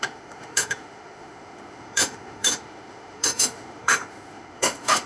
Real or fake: fake